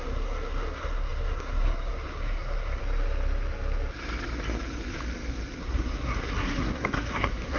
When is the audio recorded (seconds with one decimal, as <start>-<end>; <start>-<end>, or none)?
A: 2.8-5.6

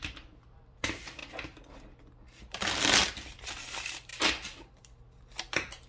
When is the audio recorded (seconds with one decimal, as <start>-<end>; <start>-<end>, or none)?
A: 1.2-2.4; 4.1-5.9

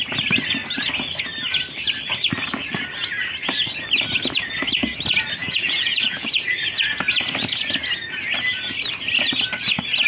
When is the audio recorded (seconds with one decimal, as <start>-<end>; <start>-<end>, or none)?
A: 0.0-5.4; 6.3-10.1

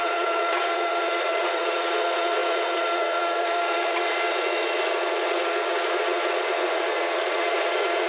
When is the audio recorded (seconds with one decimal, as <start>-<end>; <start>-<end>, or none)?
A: none

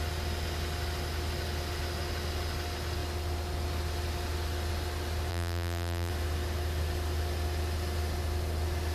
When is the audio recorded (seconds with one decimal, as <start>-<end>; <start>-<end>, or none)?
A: 0.0-5.3; 6.1-8.9